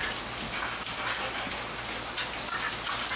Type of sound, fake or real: real